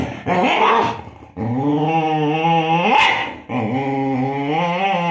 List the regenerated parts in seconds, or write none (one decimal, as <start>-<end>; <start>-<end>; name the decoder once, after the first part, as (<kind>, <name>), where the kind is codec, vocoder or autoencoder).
none